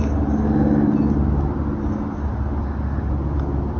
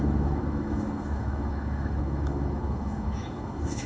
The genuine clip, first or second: first